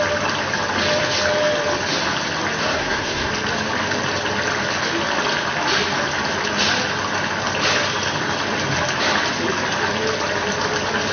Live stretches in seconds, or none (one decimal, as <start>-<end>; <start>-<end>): 0.0-2.6; 3.3-11.1